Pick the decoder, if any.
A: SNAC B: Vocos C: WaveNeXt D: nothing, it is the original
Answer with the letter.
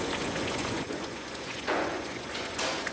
B